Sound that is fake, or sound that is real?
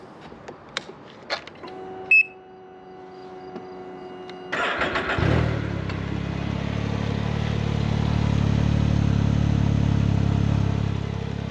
real